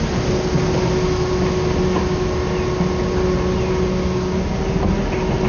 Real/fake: real